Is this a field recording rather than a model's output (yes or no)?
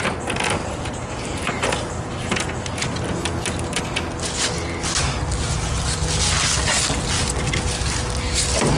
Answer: yes